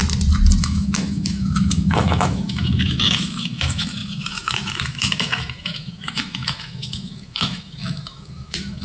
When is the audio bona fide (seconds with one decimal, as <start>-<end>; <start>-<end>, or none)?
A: 0.0-0.6